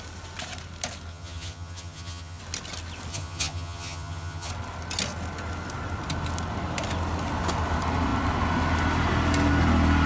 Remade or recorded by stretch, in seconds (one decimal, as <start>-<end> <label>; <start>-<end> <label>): 0.0-1.1 recorded; 1.1-2.4 remade; 2.4-3.1 recorded; 3.1-4.5 remade; 4.5-10.1 recorded